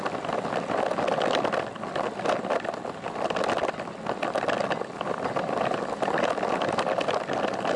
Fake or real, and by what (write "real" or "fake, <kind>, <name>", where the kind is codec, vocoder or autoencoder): real